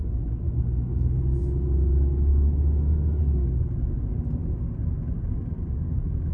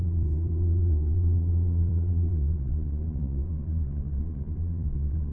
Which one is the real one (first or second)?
first